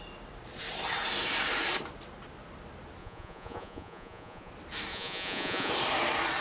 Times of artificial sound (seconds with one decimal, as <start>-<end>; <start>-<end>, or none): 3.0-4.5; 4.9-5.7